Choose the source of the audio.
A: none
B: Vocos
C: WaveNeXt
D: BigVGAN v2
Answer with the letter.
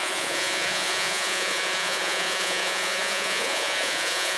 B